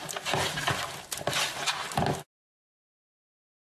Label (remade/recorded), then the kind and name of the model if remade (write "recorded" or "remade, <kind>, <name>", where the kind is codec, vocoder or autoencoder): recorded